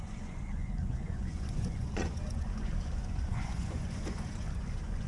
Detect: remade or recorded remade